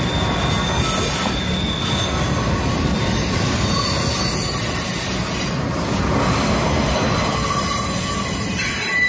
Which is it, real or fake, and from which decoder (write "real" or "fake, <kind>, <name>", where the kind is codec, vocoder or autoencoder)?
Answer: real